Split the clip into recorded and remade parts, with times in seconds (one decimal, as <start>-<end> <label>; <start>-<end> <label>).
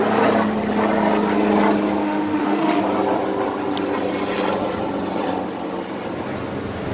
0.0-2.0 recorded; 2.0-2.8 remade; 2.8-6.9 recorded